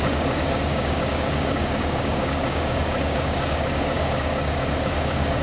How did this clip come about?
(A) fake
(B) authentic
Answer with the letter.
A